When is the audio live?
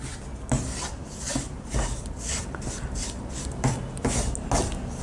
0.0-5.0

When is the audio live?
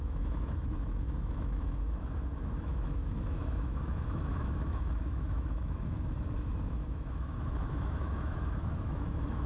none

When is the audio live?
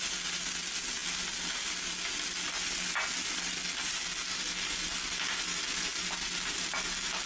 0.0-7.3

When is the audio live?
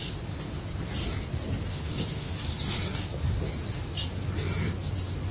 0.0-1.7; 2.3-5.3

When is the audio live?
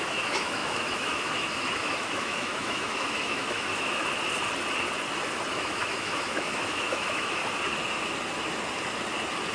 4.0-5.5; 7.4-9.5